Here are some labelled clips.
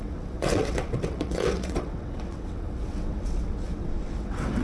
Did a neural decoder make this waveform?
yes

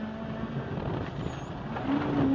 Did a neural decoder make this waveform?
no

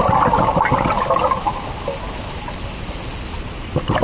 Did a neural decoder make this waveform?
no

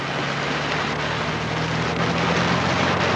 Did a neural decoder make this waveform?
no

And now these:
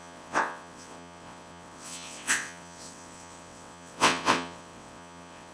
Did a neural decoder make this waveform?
yes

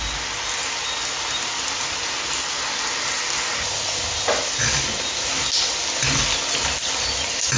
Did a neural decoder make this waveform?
no